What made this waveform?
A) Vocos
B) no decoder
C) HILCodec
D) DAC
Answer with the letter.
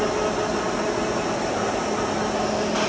B